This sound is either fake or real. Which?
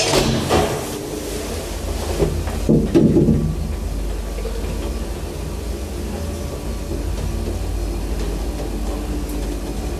real